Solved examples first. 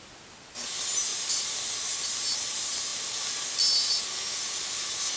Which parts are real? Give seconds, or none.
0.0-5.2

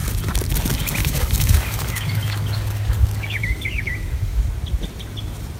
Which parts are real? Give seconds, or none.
0.0-1.0; 4.4-5.6

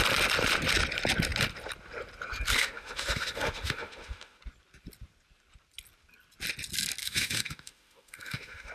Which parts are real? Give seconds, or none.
0.0-2.5; 4.4-7.0

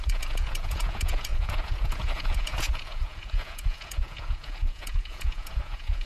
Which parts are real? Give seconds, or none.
none

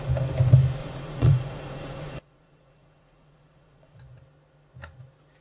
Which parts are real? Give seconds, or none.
0.0-0.8; 4.0-5.4

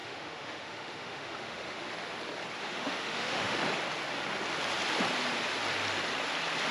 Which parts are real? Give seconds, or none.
1.9-2.6; 3.6-6.7